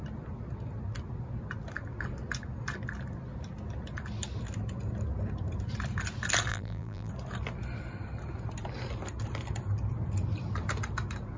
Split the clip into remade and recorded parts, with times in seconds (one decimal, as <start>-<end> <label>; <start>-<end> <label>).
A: 0.0-6.5 recorded; 6.5-7.1 remade; 7.1-11.4 recorded